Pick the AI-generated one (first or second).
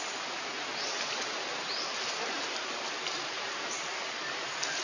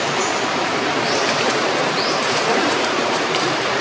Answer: second